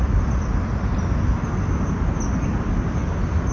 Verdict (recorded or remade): recorded